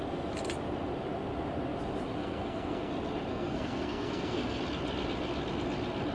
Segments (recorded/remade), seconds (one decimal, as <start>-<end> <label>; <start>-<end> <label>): 0.0-2.2 recorded; 2.2-2.9 remade; 2.9-3.3 recorded; 3.3-4.6 remade; 4.6-6.1 recorded